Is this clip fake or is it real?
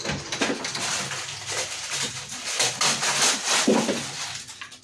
real